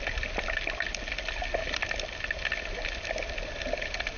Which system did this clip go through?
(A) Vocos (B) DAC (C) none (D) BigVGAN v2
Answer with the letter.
C